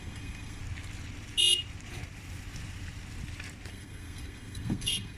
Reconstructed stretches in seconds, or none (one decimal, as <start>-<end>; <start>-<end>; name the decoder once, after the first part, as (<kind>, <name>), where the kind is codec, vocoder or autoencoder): 0.0-0.6 (codec, SNAC); 3.7-5.2